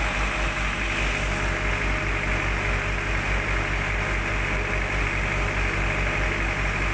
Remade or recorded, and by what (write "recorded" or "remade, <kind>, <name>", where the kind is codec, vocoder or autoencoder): recorded